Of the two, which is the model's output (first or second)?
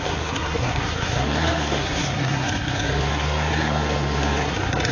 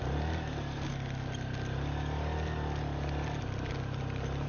first